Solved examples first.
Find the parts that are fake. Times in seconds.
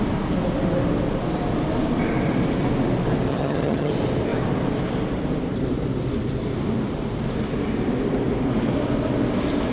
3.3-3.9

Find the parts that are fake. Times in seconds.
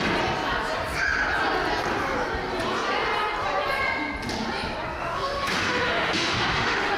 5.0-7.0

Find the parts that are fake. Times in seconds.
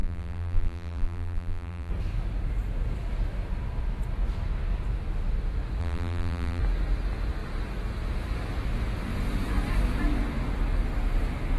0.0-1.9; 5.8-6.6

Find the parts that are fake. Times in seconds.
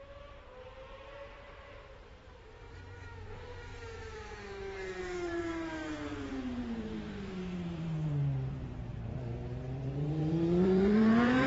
0.0-8.9; 9.8-11.5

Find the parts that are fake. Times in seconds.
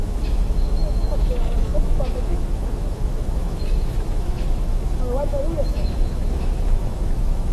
0.0-7.5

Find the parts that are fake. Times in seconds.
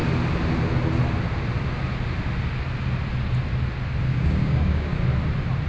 4.1-5.0